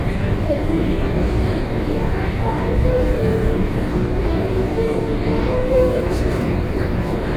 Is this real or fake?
fake